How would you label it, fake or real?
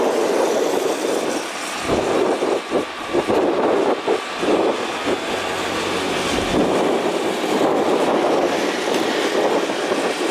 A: real